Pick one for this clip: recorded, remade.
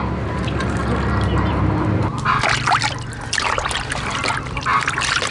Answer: recorded